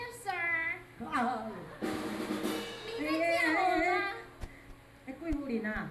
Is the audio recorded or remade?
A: recorded